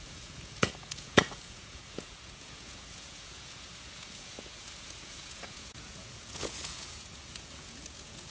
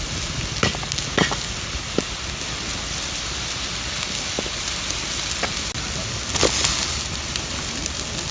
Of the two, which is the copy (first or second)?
first